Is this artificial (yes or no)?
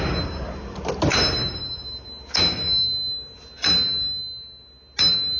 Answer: no